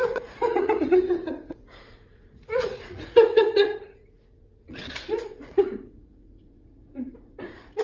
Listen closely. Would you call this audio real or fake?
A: fake